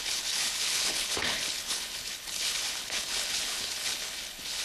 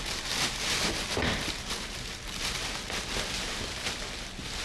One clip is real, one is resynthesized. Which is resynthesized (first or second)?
first